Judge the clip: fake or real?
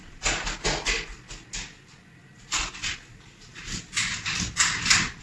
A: real